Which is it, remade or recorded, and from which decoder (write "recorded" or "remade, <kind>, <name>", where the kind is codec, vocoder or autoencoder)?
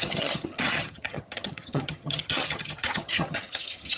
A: remade, vocoder, HiFi-GAN